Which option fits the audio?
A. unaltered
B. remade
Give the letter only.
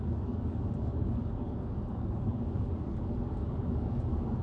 B